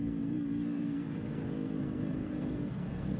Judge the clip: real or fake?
fake